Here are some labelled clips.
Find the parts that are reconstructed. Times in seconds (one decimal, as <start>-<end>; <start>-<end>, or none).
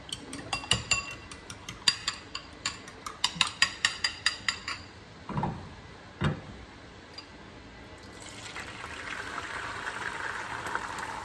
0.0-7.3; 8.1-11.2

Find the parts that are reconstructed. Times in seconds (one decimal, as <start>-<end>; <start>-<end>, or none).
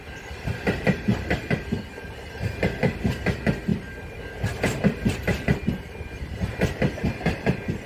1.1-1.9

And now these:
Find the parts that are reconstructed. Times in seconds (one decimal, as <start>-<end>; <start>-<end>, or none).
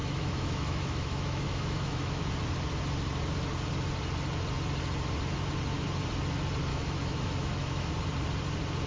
0.0-2.2; 6.7-7.9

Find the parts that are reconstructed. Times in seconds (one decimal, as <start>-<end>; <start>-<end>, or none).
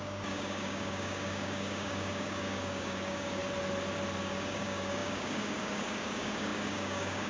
0.0-3.4; 4.2-7.3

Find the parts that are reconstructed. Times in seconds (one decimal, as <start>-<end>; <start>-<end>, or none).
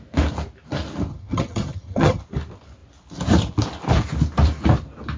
1.1-2.2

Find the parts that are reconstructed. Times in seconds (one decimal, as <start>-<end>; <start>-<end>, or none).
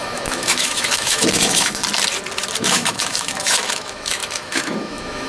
0.0-1.8; 2.6-5.3